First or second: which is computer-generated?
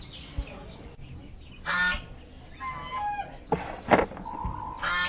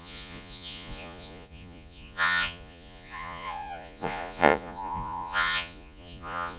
second